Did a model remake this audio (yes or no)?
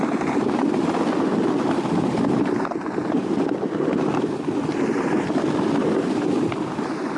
no